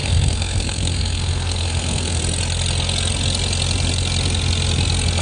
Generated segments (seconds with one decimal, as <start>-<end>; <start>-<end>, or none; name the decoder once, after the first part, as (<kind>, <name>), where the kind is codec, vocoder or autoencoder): 0.0-2.2 (codec, SNAC)